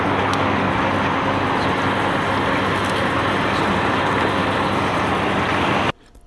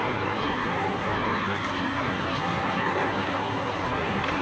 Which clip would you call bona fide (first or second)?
first